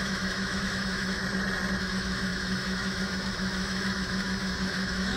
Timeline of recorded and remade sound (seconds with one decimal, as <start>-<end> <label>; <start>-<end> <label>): 0.0-1.2 remade; 1.2-1.8 recorded; 1.8-5.2 remade